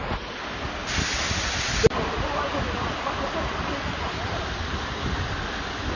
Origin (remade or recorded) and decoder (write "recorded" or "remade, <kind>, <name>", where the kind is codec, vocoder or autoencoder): recorded